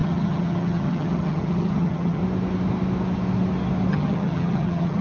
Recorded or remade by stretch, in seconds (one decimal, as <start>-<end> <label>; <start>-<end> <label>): 0.0-2.2 remade; 2.2-3.9 recorded; 3.9-5.0 remade